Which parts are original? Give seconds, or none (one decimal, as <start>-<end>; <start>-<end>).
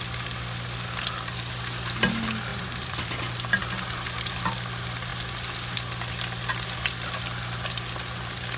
0.0-2.5; 3.6-8.6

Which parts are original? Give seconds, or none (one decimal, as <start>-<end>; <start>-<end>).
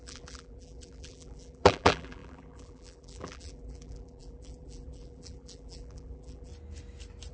6.5-7.3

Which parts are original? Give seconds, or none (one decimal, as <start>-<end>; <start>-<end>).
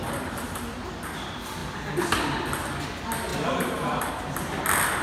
0.6-3.3; 4.1-5.0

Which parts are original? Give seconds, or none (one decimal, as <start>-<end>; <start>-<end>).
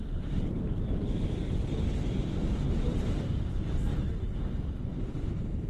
0.0-2.2; 4.0-5.7